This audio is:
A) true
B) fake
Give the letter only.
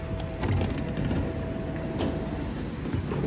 A